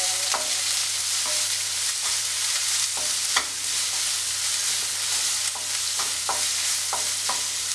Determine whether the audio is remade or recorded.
remade